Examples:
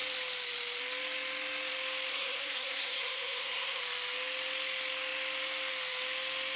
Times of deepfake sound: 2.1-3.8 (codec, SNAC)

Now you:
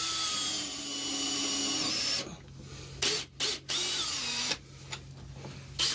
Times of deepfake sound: none

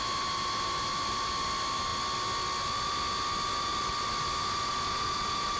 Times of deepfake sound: none